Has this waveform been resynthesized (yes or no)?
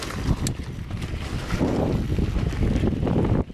no